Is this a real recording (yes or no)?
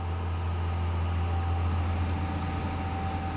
yes